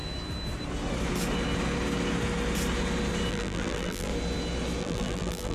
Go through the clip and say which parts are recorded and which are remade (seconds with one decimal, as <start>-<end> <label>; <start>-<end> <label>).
0.0-3.3 recorded; 3.3-4.1 remade; 4.1-4.8 recorded; 4.8-5.5 remade